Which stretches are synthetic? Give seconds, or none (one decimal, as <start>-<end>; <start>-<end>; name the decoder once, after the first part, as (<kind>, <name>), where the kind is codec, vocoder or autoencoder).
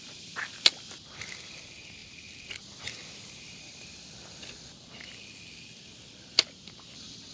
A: none